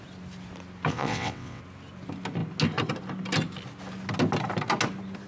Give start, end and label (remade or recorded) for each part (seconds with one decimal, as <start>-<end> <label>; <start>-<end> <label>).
0.0-0.9 recorded; 0.9-1.6 remade; 1.6-5.3 recorded